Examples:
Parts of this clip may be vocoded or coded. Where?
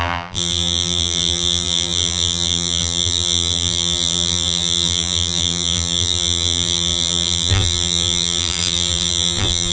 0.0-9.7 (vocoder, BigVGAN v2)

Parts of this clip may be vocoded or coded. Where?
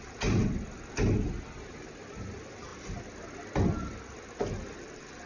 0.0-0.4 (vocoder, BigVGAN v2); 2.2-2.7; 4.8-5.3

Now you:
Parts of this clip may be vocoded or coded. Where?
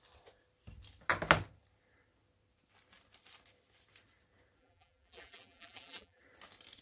4.6-6.2 (vocoder, BigVGAN v2)